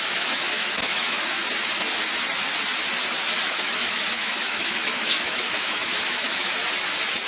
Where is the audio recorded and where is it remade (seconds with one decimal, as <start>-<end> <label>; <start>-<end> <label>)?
0.0-1.4 remade; 1.4-3.4 recorded; 3.4-6.6 remade; 6.6-7.3 recorded